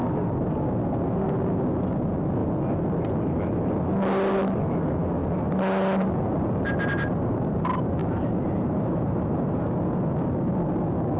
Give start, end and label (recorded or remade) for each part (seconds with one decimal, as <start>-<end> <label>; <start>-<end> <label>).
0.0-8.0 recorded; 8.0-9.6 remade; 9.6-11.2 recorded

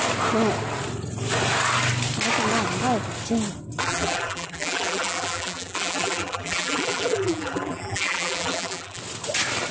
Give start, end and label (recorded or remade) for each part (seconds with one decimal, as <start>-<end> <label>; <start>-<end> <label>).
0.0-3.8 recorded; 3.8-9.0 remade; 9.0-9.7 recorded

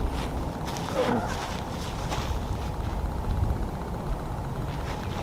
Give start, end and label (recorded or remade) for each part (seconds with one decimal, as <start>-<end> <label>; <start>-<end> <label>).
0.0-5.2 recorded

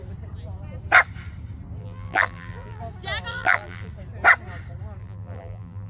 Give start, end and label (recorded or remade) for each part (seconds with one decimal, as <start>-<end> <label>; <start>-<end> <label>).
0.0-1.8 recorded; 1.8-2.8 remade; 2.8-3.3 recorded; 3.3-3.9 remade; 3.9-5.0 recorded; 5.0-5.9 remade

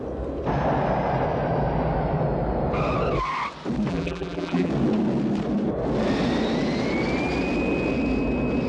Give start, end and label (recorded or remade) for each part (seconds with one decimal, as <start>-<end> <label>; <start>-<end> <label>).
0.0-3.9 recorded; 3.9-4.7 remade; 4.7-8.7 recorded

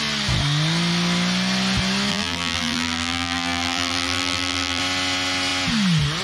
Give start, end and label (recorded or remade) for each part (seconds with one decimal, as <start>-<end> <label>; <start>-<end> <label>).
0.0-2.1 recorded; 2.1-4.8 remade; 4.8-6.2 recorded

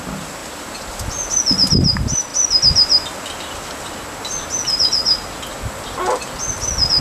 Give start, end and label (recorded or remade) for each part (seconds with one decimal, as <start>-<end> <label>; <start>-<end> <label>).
0.0-7.0 recorded

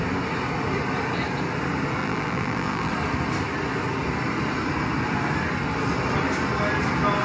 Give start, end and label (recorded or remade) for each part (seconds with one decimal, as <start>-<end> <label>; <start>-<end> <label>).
0.0-2.0 recorded; 2.0-2.9 remade; 2.9-7.2 recorded